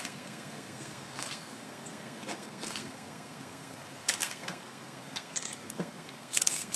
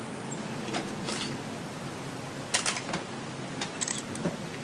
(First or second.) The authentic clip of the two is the second